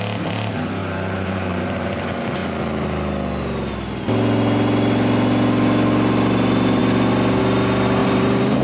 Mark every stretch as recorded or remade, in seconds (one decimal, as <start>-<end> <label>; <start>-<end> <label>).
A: 0.0-0.8 recorded; 0.8-2.0 remade; 2.0-8.0 recorded; 8.0-8.6 remade